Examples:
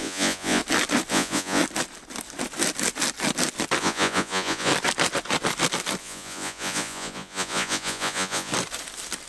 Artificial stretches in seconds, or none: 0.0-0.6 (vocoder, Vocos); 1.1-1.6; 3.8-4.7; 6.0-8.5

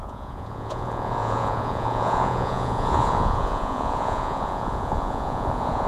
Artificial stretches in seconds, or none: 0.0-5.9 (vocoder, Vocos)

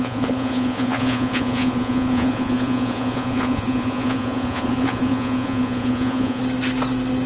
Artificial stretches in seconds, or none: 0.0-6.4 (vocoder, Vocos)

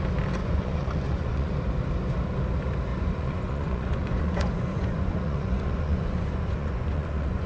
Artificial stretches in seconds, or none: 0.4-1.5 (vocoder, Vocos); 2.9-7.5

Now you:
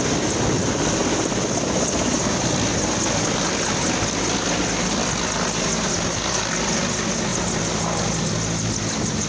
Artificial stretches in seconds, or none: none

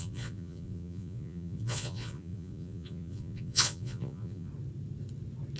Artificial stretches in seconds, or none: 0.0-4.5 (vocoder, Vocos)

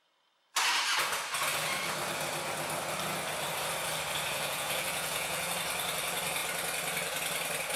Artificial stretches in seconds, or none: 4.3-5.5 (vocoder, Vocos)

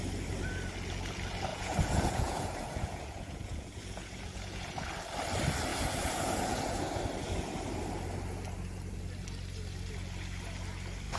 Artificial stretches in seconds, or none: 1.5-4.8 (vocoder, Vocos); 5.7-7.0